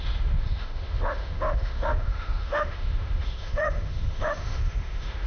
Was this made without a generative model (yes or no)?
no